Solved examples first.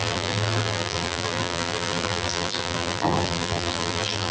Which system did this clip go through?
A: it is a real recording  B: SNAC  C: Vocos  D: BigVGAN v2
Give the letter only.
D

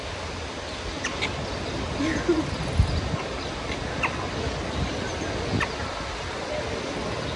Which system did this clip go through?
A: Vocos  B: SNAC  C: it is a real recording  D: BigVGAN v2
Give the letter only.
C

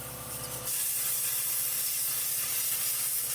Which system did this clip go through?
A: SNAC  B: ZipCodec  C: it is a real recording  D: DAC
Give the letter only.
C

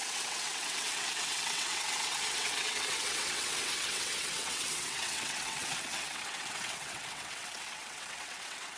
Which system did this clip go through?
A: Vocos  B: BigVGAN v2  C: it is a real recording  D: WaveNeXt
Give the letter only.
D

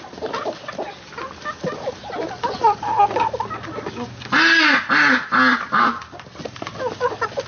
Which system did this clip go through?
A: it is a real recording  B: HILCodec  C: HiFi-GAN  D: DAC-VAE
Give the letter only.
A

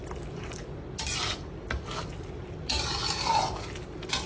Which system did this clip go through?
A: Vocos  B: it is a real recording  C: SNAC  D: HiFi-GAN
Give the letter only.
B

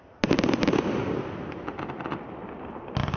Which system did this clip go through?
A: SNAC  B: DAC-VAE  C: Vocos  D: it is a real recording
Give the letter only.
D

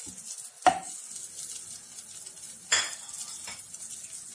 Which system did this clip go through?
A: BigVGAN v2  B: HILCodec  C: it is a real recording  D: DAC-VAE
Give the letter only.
C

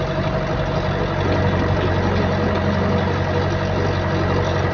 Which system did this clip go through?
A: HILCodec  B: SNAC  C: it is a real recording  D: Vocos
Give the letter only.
C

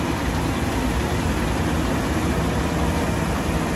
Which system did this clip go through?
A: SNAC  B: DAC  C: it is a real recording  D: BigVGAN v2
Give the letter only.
C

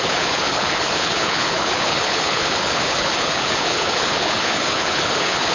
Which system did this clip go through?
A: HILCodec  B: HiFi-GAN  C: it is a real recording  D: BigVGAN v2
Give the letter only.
A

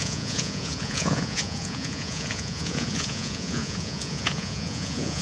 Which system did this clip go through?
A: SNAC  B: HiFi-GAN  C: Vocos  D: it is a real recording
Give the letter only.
C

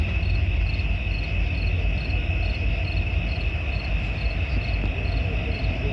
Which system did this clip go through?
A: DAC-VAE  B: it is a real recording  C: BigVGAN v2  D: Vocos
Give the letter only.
B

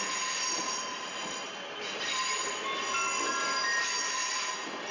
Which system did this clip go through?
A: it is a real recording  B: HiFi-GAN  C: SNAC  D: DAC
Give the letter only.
A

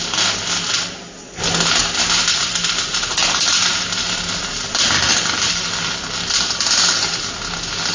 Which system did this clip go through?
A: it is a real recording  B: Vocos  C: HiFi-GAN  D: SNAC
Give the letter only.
A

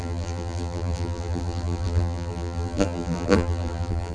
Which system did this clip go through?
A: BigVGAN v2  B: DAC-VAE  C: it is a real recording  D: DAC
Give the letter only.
A